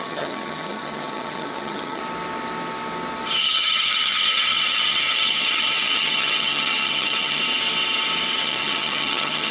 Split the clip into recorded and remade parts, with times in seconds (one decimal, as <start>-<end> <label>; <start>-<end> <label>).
0.0-2.0 remade; 2.0-3.4 recorded; 3.4-7.4 remade; 7.4-8.4 recorded; 8.4-9.5 remade